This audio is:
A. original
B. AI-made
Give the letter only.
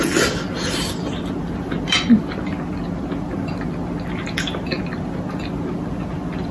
A